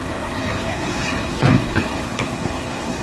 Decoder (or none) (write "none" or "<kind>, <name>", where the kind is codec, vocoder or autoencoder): codec, SNAC